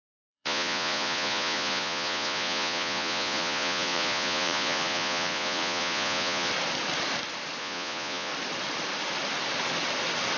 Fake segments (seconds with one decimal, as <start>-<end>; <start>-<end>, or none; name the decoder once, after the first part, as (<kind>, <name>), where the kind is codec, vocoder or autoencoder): 0.0-6.5 (vocoder, Vocos); 7.6-8.3